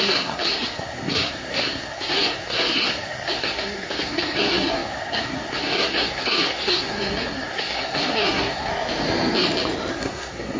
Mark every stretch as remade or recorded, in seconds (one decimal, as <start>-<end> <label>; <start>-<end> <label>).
0.0-8.7 remade; 8.7-9.9 recorded; 9.9-10.6 remade